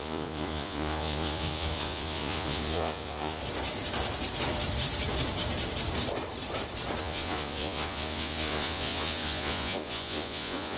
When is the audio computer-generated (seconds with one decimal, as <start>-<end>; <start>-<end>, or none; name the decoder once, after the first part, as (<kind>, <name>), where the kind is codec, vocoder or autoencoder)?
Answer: 0.0-3.4 (vocoder, Vocos); 7.0-10.8